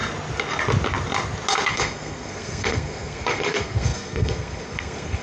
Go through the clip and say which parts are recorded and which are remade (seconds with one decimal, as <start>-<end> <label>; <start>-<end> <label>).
0.0-1.7 recorded; 1.7-5.2 remade